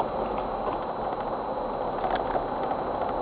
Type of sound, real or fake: real